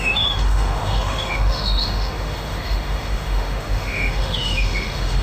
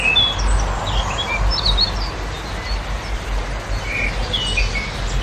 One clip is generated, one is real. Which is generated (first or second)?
first